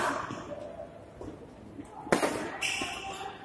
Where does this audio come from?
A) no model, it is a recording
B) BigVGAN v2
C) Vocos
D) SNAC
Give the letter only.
A